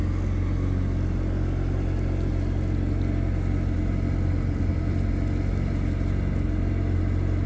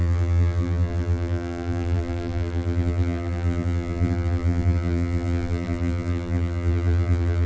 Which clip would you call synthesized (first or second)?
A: second